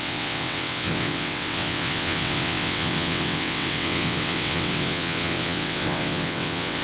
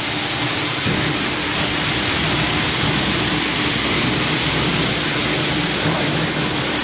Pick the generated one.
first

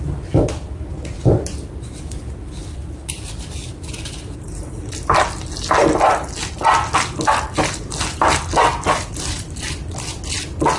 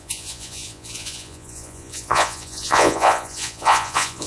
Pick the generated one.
second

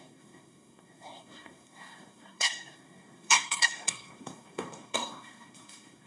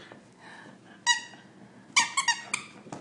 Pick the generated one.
first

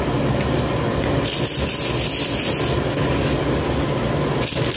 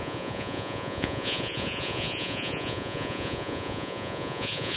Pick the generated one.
second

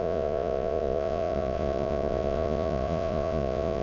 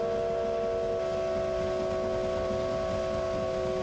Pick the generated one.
first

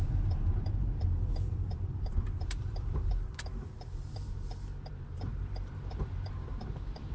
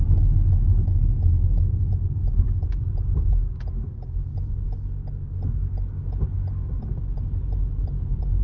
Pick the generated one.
first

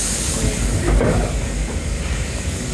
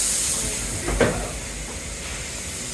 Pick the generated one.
first